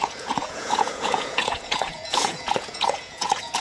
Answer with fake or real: fake